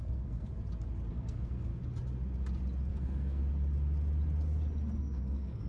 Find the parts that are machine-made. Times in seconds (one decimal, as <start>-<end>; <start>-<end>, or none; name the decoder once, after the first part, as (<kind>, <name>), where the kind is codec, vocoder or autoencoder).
0.0-0.5 (codec, SNAC); 1.1-1.7; 2.9-3.4; 5.0-5.7